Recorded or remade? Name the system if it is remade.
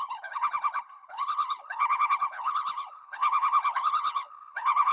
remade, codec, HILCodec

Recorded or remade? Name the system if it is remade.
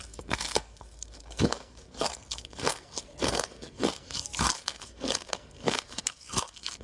remade, codec, SNAC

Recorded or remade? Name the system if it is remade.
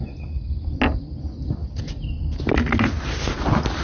recorded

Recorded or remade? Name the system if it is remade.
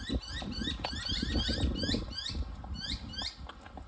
recorded